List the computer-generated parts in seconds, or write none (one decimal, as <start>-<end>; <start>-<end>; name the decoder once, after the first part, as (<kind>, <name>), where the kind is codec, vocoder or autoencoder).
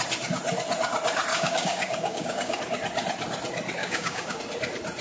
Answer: 1.3-2.6 (codec, DAC); 3.8-4.4